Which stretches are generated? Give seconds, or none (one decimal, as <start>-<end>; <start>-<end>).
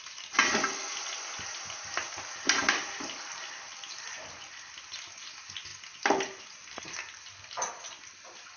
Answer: none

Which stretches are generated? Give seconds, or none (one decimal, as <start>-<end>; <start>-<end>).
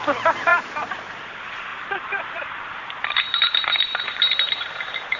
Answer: 0.0-5.2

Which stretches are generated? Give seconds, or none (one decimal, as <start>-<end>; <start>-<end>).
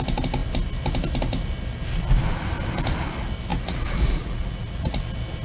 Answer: 3.5-5.0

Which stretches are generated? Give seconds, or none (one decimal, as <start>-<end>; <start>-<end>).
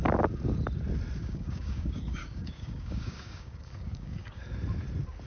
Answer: 1.2-4.4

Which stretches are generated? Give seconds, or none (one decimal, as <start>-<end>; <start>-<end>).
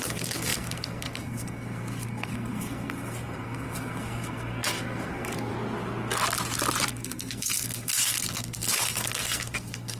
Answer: 0.0-5.5; 6.9-10.0